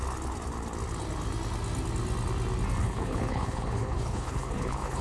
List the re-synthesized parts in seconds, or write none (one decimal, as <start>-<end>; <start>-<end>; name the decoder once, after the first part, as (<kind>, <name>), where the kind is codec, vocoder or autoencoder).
2.8-5.0 (codec, HILCodec)